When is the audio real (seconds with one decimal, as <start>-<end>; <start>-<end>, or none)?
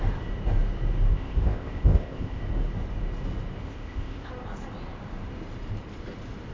0.0-1.1; 2.4-3.6; 4.3-6.5